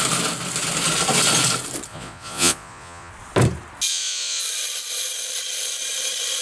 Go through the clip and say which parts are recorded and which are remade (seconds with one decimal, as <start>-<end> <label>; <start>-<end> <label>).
0.0-1.9 recorded; 1.9-3.1 remade; 3.1-3.9 recorded; 3.9-4.4 remade; 4.4-6.4 recorded